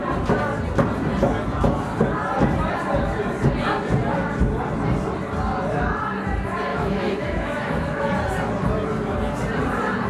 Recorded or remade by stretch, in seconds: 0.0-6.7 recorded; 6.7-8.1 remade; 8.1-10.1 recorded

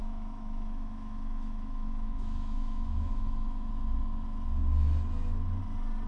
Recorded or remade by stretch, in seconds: 0.0-3.7 remade; 3.7-6.1 recorded